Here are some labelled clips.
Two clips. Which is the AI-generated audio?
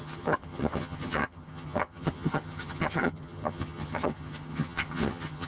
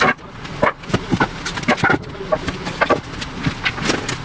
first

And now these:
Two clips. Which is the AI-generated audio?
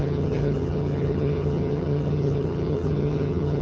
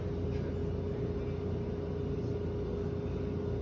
first